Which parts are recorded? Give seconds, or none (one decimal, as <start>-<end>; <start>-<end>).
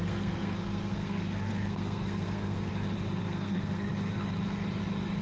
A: 2.7-3.2; 3.9-5.2